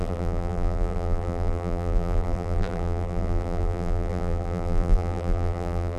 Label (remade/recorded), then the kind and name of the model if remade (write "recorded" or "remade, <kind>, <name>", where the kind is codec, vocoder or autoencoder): remade, vocoder, BigVGAN v2